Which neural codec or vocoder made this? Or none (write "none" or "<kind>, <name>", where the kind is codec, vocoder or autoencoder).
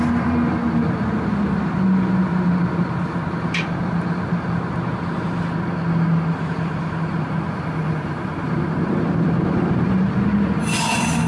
none